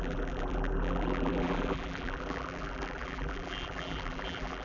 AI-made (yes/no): yes